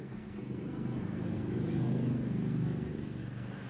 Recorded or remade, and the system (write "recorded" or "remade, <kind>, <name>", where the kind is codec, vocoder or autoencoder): remade, codec, SNAC